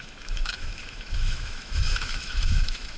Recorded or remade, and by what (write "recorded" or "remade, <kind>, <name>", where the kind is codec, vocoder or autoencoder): remade, autoencoder, DAC-VAE